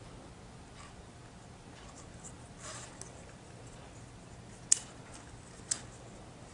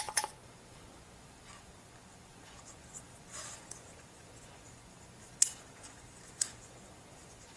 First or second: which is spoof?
second